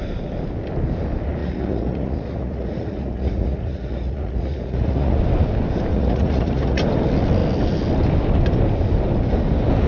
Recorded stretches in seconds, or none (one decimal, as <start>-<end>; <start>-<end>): 0.0-1.4; 5.2-5.9; 6.8-9.9